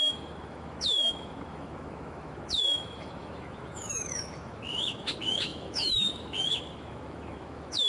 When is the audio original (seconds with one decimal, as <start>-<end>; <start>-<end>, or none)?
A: none